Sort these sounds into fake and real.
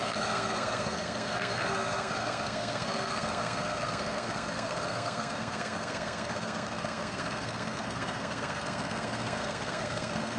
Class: fake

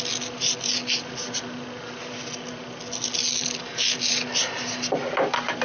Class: real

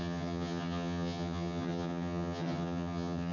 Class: fake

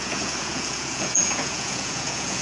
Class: fake